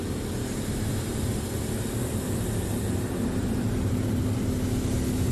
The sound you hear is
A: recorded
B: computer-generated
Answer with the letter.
A